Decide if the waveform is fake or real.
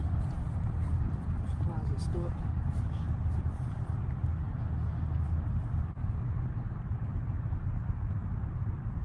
real